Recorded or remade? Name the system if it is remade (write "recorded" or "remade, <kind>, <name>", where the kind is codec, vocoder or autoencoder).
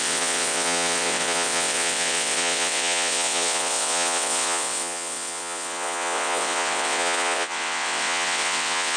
remade, vocoder, WaveNeXt